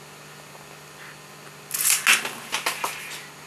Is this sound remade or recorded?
recorded